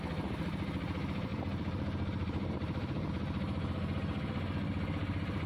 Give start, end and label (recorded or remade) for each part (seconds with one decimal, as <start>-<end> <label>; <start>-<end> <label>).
0.0-1.3 recorded; 1.3-3.1 remade; 3.1-5.5 recorded